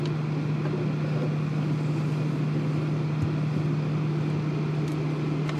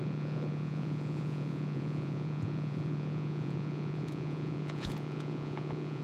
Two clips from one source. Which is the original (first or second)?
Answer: first